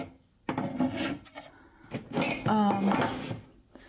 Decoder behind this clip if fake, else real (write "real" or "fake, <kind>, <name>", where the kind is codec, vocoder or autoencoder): real